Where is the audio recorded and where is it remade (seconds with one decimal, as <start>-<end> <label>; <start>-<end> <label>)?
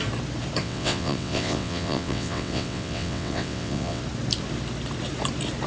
0.0-0.6 recorded; 0.6-4.0 remade; 4.0-5.7 recorded